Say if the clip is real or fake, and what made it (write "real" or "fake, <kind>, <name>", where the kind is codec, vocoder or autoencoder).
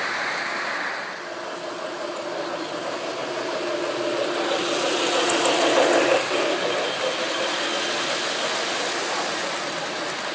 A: real